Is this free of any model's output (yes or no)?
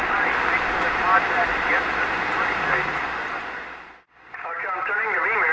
yes